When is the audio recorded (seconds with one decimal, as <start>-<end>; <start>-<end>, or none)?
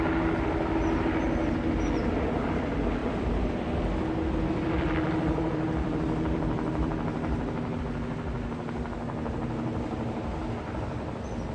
0.0-3.0; 7.8-10.4; 11.1-11.5